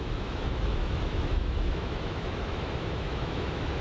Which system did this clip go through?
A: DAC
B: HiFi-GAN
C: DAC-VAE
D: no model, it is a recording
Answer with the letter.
C